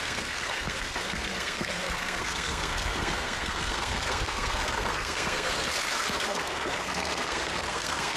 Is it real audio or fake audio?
fake